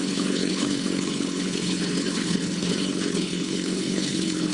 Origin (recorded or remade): remade